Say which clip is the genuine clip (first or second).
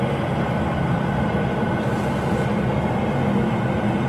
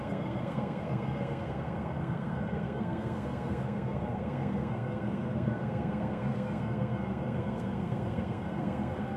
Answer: first